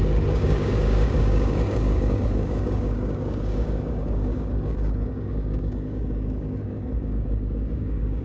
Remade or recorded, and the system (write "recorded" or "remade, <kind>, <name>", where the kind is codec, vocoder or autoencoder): remade, codec, DAC